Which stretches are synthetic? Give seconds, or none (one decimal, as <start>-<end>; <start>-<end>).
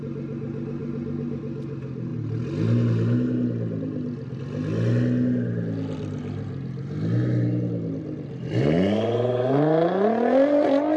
none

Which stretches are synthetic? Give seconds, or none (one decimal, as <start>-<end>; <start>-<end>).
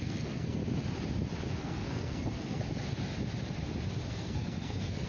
0.0-0.6; 1.6-2.6; 4.1-5.1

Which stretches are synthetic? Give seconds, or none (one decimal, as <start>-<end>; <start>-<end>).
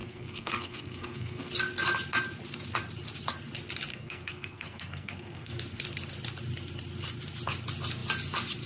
0.0-1.5; 3.9-5.5